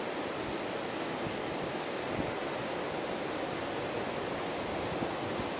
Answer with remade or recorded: recorded